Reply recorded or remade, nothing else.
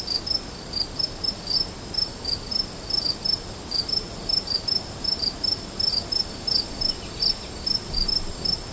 recorded